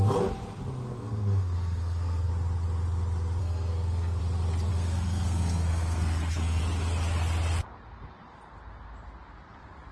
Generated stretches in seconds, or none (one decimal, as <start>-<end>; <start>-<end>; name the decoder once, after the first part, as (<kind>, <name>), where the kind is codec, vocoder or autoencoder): 0.9-2.3 (codec, SNAC); 3.4-4.2; 4.7-6.6